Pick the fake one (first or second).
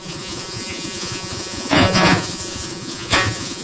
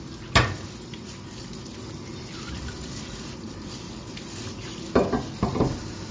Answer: first